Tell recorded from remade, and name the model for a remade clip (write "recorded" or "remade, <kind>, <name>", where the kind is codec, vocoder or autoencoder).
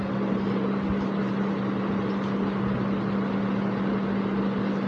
recorded